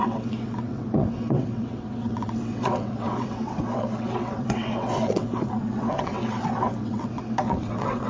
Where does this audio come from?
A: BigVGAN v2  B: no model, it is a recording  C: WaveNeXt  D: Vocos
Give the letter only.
C